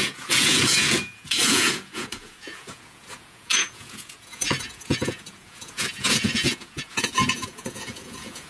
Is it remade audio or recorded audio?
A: remade